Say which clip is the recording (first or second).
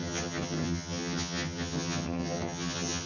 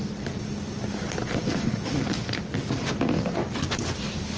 second